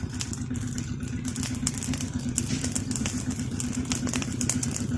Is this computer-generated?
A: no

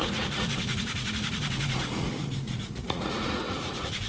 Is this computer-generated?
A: yes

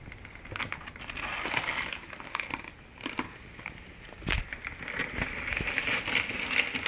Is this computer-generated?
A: no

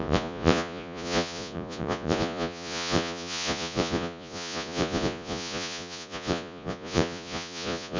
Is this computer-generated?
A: yes